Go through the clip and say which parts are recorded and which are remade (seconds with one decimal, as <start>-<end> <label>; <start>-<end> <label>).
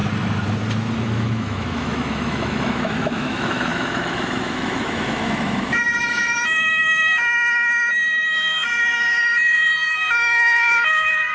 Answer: 0.0-1.0 recorded; 1.0-11.3 remade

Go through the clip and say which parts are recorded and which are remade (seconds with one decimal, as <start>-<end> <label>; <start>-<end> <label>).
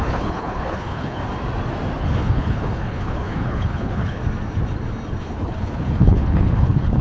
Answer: 0.0-1.2 remade; 1.2-2.0 recorded; 2.0-4.2 remade; 4.2-5.2 recorded; 5.2-7.0 remade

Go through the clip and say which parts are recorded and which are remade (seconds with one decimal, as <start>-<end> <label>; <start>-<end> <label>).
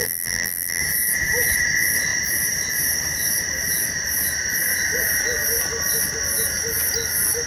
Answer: 0.0-0.8 remade; 0.8-7.5 recorded